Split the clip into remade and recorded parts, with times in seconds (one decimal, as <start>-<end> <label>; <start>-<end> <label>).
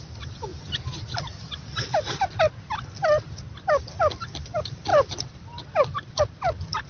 0.0-6.9 recorded